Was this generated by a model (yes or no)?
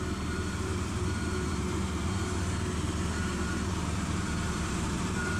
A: yes